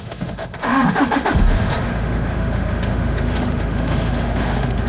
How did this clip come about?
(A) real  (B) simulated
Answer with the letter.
B